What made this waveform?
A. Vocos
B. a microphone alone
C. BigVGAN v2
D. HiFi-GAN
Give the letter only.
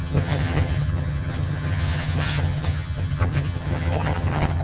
D